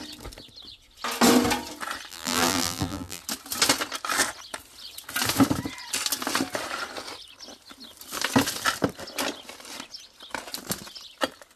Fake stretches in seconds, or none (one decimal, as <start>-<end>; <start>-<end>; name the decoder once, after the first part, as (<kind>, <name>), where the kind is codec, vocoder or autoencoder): 2.1-3.2 (vocoder, BigVGAN v2)